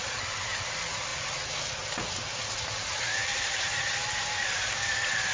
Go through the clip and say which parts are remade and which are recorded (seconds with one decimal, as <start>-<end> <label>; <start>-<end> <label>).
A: 0.0-3.3 recorded; 3.3-3.9 remade; 3.9-5.3 recorded